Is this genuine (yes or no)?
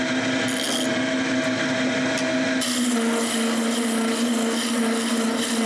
yes